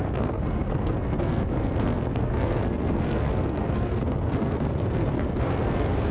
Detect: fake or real fake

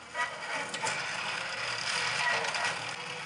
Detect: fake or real real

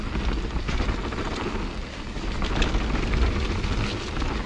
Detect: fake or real real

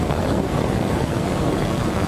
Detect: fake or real fake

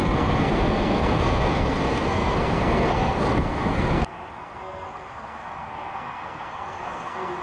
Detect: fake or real fake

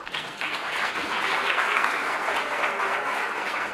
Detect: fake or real fake